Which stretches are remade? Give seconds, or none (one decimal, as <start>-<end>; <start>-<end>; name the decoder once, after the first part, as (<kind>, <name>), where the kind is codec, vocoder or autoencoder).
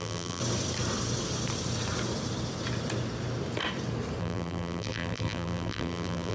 0.0-0.4 (vocoder, BigVGAN v2); 4.2-6.3